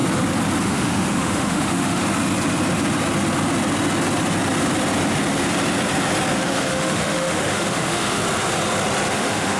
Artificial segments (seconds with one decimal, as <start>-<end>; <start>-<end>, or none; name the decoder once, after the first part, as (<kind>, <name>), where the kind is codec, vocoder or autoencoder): 0.6-2.0 (autoencoder, DAC-VAE); 6.4-8.2; 9.1-9.6